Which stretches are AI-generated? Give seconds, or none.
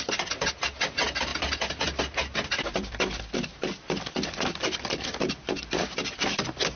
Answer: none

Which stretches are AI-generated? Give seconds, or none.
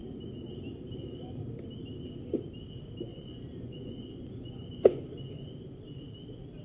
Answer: 3.1-5.5 (vocoder, Vocos)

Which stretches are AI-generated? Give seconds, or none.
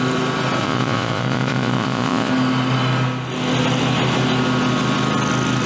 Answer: 0.6-2.3 (vocoder, Vocos)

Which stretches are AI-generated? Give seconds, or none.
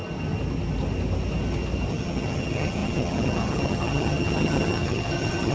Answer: 1.9-5.5 (vocoder, HiFi-GAN)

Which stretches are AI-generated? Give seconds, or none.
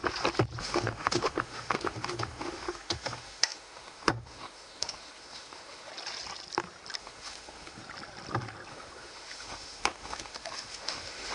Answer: 0.6-5.9 (autoencoder, DAC-VAE); 7.0-7.8; 8.7-11.3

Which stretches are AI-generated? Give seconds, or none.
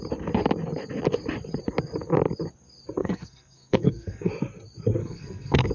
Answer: 3.0-4.3 (codec, SNAC); 5.0-5.7